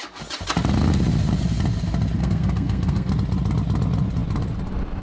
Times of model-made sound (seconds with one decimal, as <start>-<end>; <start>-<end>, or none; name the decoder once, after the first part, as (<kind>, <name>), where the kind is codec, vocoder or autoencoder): 2.2-3.1 (codec, SNAC)